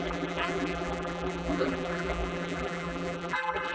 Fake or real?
fake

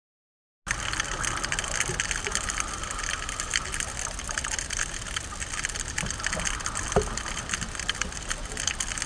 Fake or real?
real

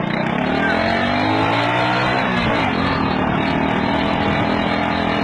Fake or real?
real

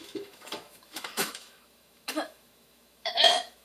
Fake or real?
fake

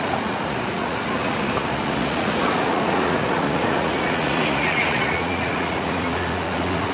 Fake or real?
fake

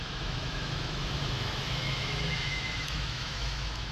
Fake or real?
fake